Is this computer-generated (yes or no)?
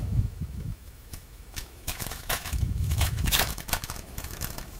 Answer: yes